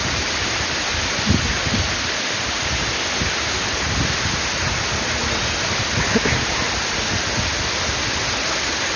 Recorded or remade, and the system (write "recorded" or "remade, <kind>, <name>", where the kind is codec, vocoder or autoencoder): recorded